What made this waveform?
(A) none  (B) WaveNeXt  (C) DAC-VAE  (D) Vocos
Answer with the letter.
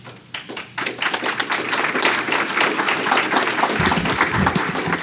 A